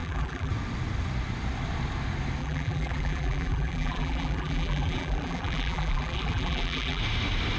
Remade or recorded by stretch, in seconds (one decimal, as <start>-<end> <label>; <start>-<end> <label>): 0.0-0.5 remade; 0.5-2.4 recorded; 2.4-7.0 remade; 7.0-7.6 recorded